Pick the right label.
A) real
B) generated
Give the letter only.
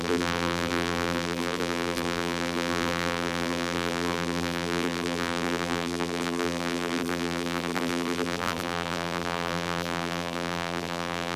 B